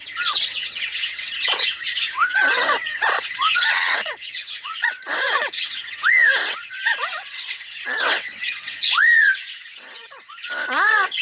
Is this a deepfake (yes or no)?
yes